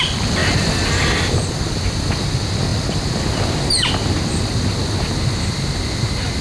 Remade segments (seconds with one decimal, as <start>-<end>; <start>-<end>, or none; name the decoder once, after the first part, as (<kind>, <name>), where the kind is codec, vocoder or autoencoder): none